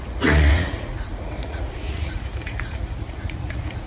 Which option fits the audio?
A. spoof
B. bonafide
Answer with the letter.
A